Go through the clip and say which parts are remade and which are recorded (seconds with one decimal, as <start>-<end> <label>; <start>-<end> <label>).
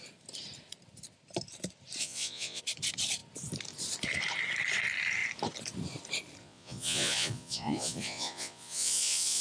0.0-2.0 recorded; 2.0-2.6 remade; 2.6-6.4 recorded; 6.4-9.4 remade